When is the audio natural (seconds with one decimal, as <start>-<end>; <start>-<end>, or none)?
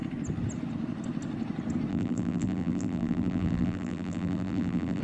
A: 0.0-1.9